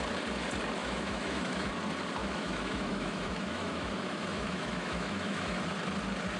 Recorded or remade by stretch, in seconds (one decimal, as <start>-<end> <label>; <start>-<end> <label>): 0.0-0.8 recorded; 0.8-1.7 remade; 1.7-2.2 recorded; 2.2-5.6 remade; 5.6-6.4 recorded